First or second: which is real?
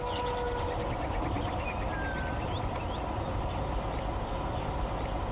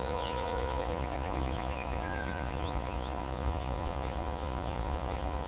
first